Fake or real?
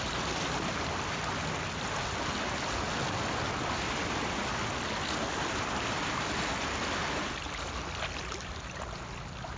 real